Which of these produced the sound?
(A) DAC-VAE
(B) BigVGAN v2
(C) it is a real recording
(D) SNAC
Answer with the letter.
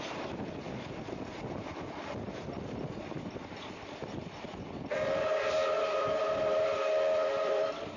B